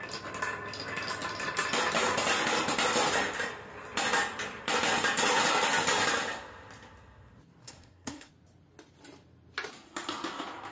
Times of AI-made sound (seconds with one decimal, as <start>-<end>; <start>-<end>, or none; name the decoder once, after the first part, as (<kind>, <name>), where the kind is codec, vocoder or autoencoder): 7.6-8.3 (codec, SNAC)